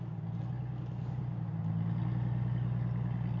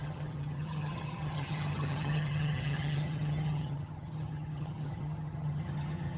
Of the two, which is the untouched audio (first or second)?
first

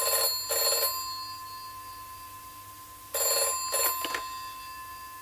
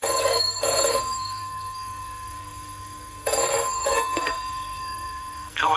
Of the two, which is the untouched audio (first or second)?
first